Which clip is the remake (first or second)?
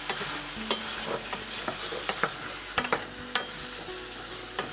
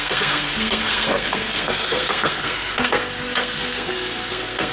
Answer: second